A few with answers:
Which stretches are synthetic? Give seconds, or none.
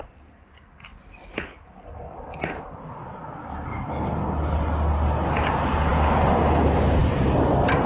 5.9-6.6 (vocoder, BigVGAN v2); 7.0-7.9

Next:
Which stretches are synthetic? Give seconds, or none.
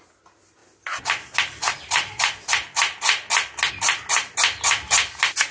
none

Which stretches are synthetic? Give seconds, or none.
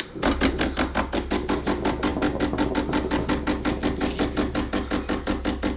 none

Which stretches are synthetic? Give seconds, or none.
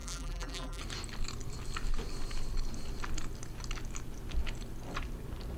0.0-0.8 (vocoder, BigVGAN v2)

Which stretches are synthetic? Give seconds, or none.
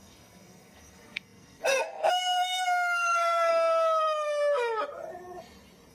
0.0-3.5 (codec, SNAC)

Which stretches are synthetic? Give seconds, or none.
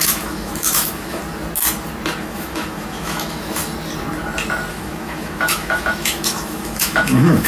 0.0-1.2 (autoencoder, DAC-VAE); 2.2-3.6; 4.7-7.5